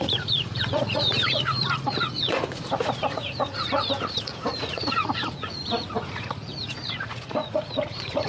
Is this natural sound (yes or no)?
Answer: no